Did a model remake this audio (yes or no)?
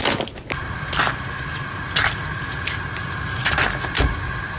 no